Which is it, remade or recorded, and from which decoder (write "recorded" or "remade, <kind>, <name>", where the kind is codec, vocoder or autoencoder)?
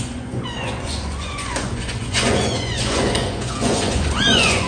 remade, vocoder, Vocos